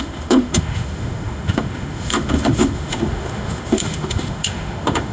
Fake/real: fake